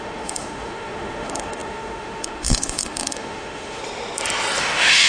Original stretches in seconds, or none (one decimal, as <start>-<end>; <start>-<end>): 3.8-4.6